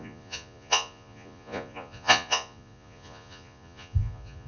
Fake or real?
fake